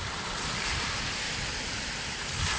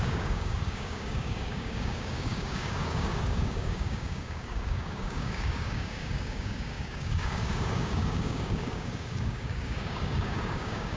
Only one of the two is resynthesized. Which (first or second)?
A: second